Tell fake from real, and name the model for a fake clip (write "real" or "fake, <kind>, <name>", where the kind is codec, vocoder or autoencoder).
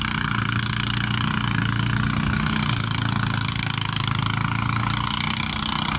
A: real